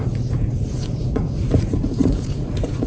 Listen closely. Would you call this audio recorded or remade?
remade